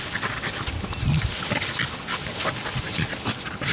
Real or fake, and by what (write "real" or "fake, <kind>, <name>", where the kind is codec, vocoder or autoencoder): real